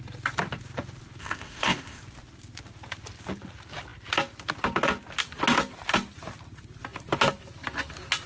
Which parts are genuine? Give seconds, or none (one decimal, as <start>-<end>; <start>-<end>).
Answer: 0.0-1.2; 2.0-8.3